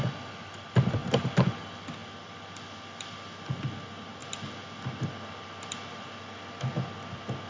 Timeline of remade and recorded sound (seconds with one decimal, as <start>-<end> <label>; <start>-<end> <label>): 0.0-7.5 recorded